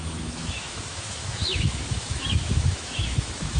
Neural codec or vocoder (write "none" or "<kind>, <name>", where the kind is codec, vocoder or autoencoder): autoencoder, DAC-VAE